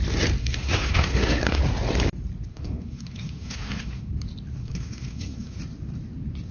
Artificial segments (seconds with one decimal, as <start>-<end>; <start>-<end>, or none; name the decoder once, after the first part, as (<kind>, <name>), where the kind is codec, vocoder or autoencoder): 0.4-1.6 (codec, SNAC); 2.5-4.1; 4.6-5.6